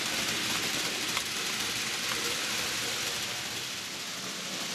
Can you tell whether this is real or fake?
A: real